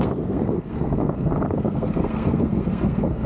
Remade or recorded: remade